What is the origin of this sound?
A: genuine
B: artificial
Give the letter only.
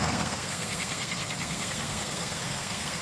B